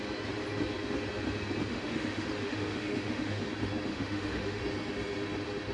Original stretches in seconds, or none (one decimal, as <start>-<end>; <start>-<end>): 0.0-1.7; 3.4-3.9; 4.6-5.7